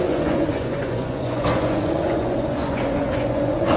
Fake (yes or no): yes